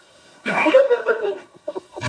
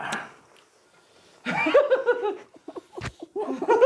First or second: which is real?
second